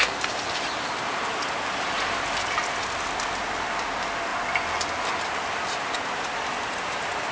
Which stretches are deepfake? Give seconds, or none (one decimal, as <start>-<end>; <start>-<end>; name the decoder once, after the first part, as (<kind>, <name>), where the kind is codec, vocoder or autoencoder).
none